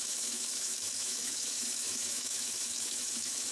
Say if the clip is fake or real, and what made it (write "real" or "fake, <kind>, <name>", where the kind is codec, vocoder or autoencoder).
fake, autoencoder, DAC-VAE